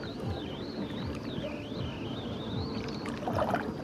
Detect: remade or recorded recorded